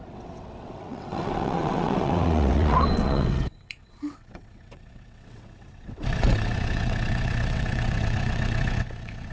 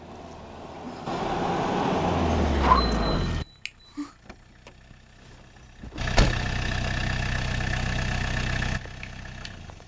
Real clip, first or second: second